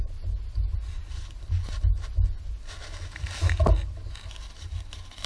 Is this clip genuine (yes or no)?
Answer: yes